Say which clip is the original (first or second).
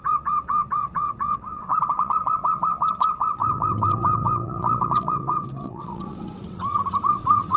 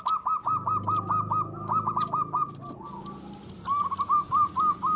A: second